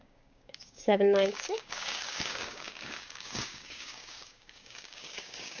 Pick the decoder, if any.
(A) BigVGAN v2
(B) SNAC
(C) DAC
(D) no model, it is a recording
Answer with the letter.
C